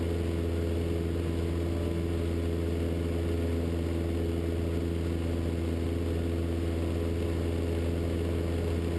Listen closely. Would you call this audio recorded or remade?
recorded